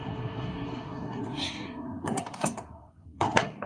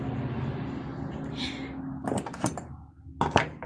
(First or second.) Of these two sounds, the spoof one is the first